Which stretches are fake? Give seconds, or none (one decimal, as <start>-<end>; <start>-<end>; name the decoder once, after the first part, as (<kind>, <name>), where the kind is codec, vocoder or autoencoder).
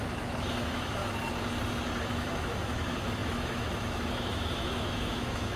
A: 0.0-1.0 (autoencoder, DAC-VAE); 2.0-5.6